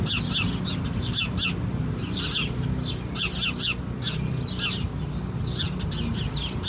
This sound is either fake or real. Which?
real